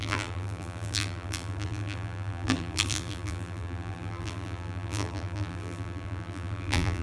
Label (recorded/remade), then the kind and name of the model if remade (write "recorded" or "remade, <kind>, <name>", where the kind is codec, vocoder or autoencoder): remade, vocoder, BigVGAN v2